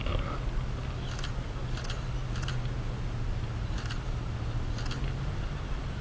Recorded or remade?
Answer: recorded